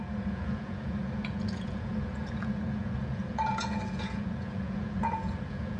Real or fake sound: fake